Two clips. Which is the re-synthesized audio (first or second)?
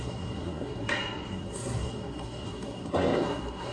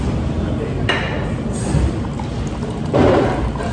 first